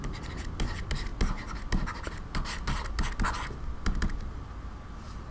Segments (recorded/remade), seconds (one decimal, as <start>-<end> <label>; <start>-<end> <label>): 0.0-5.3 recorded